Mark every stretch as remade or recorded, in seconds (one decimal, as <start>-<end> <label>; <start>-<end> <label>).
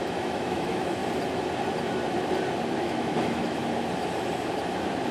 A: 0.0-1.0 remade; 1.0-2.8 recorded; 2.8-3.6 remade; 3.6-5.1 recorded